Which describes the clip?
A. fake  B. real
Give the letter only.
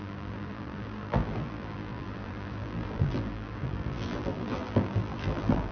A